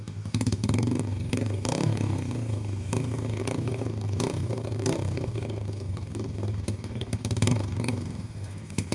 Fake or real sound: fake